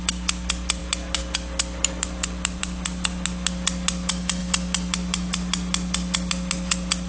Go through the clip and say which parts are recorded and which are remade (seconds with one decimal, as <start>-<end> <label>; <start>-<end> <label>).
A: 0.0-0.8 recorded; 0.8-2.6 remade; 2.6-7.1 recorded